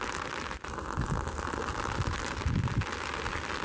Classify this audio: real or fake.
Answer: real